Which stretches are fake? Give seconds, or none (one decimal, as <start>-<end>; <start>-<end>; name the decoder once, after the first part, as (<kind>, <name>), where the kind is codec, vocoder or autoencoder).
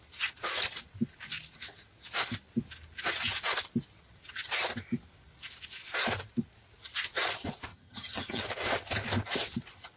7.7-8.4 (vocoder, HiFi-GAN)